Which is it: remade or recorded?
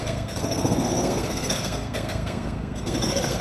remade